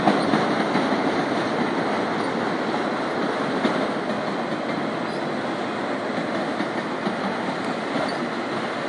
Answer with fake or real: real